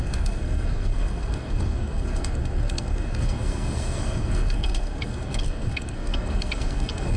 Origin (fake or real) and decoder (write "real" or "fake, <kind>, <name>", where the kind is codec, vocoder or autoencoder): fake, codec, SNAC